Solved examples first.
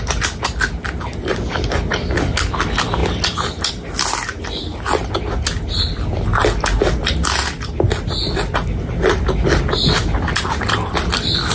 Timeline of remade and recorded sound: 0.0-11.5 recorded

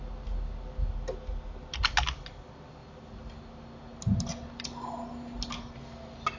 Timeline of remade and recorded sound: 0.0-6.4 recorded